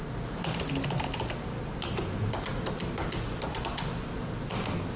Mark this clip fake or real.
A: real